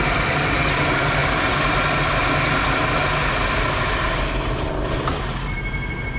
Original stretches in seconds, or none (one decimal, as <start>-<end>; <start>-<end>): 0.0-6.2